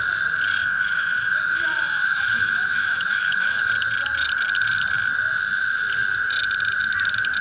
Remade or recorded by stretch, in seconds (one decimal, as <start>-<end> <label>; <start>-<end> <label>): 0.0-0.6 recorded; 0.6-3.7 remade; 3.7-7.4 recorded